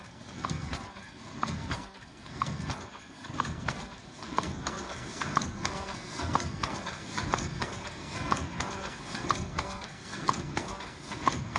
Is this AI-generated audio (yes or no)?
yes